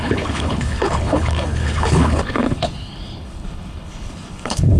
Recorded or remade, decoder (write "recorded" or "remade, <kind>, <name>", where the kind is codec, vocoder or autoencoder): remade, codec, HILCodec